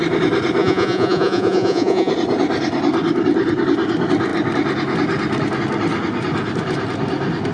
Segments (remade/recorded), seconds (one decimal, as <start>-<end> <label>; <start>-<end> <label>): 0.0-0.6 recorded; 0.6-2.1 remade; 2.1-7.5 recorded